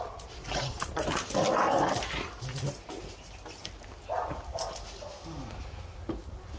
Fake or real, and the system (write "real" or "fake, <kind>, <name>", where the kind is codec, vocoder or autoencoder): real